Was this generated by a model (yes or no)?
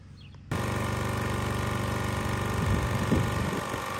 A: no